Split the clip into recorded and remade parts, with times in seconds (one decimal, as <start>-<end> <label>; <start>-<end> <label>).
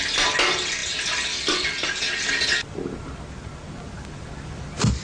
0.0-5.0 recorded